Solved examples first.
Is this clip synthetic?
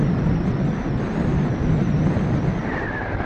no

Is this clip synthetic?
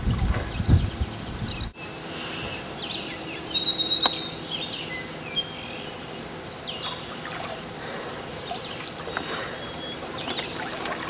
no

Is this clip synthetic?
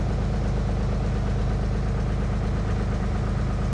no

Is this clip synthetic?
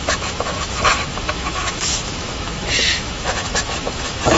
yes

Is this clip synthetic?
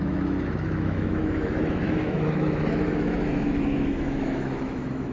yes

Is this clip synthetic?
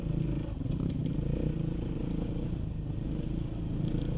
no